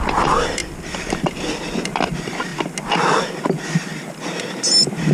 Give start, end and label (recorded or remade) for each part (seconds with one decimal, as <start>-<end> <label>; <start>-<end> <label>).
0.0-0.6 remade; 0.6-1.1 recorded; 1.1-2.5 remade; 2.5-3.4 recorded; 3.4-5.1 remade